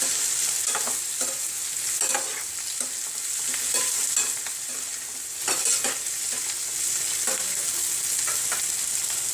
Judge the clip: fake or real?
real